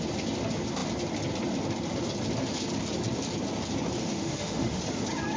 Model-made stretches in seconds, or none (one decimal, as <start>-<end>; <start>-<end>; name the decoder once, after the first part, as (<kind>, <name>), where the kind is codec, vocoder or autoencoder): 4.0-4.8 (autoencoder, DAC-VAE)